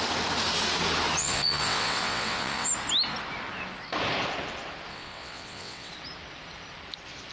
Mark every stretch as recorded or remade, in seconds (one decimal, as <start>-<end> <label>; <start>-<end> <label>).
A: 0.0-1.2 recorded; 1.2-2.7 remade; 2.7-4.9 recorded; 4.9-5.9 remade; 5.9-7.3 recorded